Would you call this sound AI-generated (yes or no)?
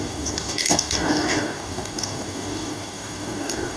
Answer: yes